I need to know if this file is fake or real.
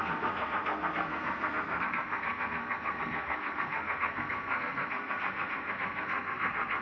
fake